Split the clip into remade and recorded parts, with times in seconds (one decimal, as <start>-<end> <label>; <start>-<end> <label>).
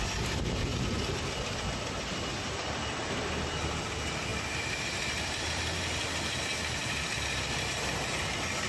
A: 0.0-4.3 recorded; 4.3-6.1 remade; 6.1-8.7 recorded